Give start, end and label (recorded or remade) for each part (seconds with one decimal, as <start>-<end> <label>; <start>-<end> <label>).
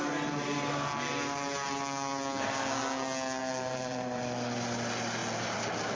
0.0-3.4 recorded; 3.4-4.2 remade; 4.2-6.0 recorded